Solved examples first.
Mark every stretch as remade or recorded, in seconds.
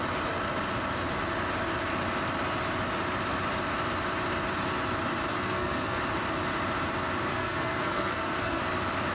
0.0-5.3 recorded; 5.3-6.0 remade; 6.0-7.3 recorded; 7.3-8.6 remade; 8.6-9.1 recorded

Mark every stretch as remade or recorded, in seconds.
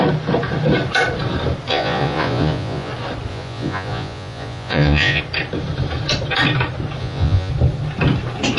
0.0-1.7 recorded; 1.7-2.9 remade; 2.9-3.3 recorded; 3.3-5.2 remade; 5.2-7.0 recorded; 7.0-7.5 remade; 7.5-8.6 recorded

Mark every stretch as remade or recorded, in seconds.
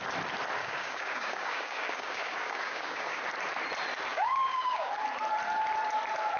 0.0-0.6 recorded; 0.6-3.2 remade; 3.2-4.1 recorded; 4.1-4.9 remade; 4.9-6.4 recorded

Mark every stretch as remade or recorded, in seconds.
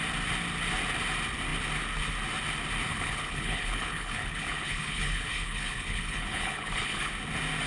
0.0-2.9 recorded; 2.9-7.1 remade; 7.1-7.7 recorded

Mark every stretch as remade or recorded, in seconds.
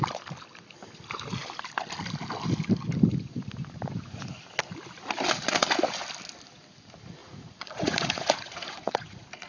0.0-7.2 recorded; 7.2-9.5 remade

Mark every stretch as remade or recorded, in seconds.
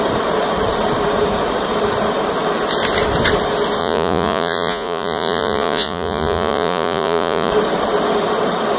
0.0-3.8 recorded; 3.8-7.5 remade; 7.5-8.8 recorded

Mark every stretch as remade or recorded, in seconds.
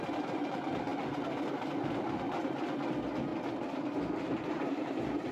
0.0-5.3 recorded